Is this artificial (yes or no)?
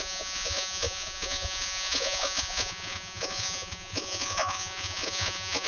yes